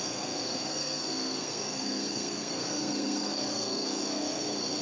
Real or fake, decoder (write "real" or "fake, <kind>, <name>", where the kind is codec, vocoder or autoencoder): fake, codec, SNAC